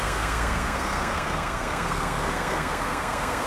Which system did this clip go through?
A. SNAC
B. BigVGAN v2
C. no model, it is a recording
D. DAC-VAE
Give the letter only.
A